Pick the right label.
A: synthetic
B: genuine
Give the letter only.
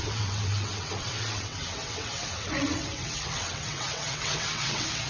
A